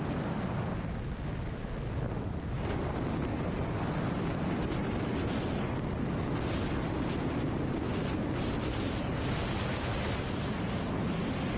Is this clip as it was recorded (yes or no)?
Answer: yes